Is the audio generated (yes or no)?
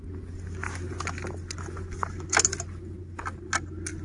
no